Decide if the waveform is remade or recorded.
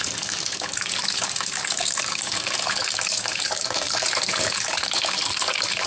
remade